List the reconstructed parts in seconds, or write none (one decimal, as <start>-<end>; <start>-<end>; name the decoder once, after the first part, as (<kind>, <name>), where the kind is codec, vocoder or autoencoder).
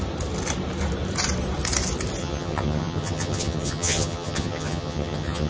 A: 2.2-5.5 (vocoder, HiFi-GAN)